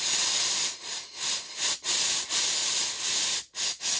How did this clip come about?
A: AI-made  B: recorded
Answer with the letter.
B